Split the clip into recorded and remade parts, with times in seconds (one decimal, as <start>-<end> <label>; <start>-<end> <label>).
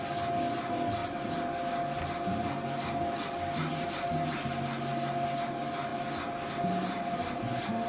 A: 0.0-7.9 recorded